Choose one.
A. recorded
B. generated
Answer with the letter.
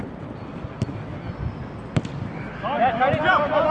A